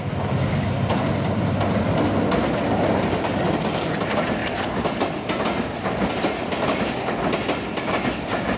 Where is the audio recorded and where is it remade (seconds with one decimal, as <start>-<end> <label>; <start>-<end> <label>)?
0.0-8.6 recorded